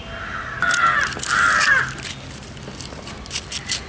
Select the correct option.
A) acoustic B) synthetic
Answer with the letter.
A